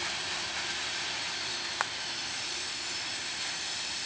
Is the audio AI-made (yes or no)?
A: no